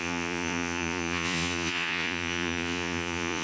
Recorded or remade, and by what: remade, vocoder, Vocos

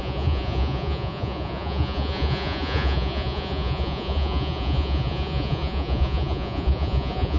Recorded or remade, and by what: remade, vocoder, Vocos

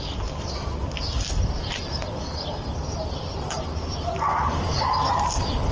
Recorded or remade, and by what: recorded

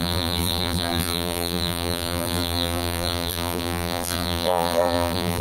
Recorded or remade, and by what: remade, vocoder, BigVGAN v2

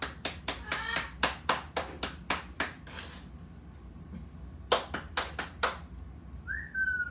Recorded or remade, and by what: recorded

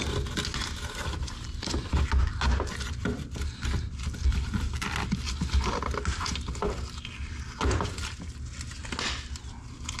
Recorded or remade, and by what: recorded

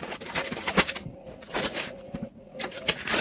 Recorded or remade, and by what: remade, vocoder, Vocos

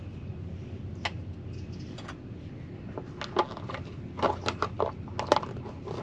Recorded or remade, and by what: recorded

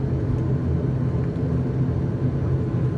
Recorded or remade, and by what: recorded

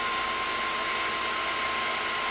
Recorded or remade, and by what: recorded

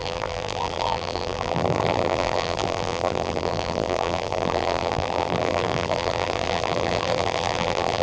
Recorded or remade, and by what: remade, vocoder, BigVGAN v2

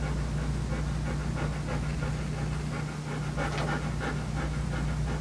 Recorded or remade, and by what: recorded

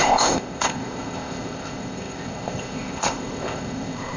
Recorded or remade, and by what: remade, codec, ZipCodec